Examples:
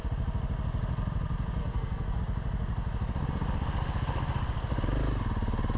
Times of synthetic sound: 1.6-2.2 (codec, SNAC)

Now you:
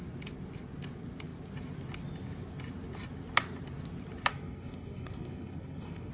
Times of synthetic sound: 4.3-6.1 (codec, SNAC)